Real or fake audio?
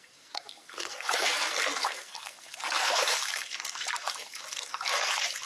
fake